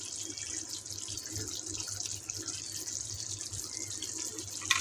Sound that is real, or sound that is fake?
real